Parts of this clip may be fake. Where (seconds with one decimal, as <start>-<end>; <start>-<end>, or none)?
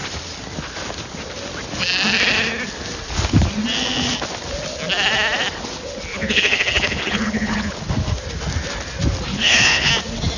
6.1-7.8; 9.3-9.9